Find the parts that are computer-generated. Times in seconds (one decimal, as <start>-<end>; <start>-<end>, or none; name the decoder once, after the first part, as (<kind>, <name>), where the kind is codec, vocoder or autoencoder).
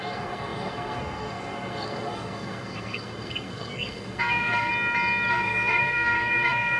0.0-4.7 (codec, SNAC); 5.3-6.8